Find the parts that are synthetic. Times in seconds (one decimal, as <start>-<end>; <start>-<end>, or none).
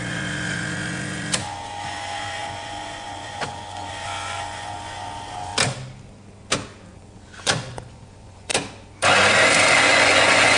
0.0-5.5; 6.9-8.5; 9.7-10.6